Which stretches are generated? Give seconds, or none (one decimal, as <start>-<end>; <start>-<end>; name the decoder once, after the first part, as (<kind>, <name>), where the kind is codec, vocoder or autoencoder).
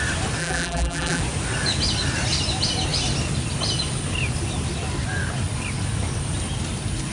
0.4-1.2 (vocoder, BigVGAN v2)